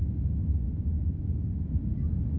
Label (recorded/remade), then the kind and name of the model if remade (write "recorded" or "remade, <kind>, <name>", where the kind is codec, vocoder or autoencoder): recorded